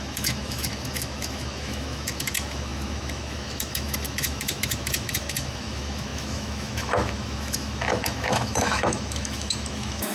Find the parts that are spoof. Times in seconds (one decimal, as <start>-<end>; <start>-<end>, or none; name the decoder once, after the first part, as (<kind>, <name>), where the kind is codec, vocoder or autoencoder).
0.0-10.1 (autoencoder, DAC-VAE)